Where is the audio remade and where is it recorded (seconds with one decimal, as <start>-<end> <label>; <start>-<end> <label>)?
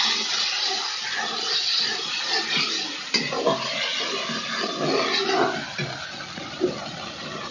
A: 0.0-7.5 recorded